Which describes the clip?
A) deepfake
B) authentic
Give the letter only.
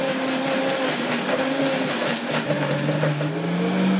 B